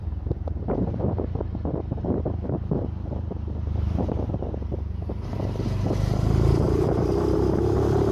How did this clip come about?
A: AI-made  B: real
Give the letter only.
A